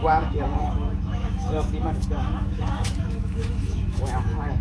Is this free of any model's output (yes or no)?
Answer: no